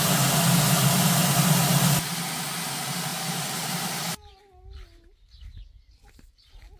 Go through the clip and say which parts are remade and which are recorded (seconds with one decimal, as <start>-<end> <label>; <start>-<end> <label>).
0.0-1.6 recorded; 1.6-2.1 remade; 2.1-3.1 recorded; 3.1-4.4 remade; 4.4-6.8 recorded